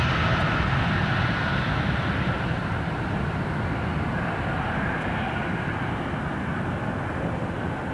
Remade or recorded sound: recorded